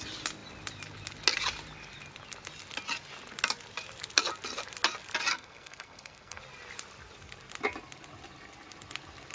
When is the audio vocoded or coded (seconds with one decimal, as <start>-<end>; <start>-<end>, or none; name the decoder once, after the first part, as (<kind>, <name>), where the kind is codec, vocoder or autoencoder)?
5.3-6.4 (codec, SNAC)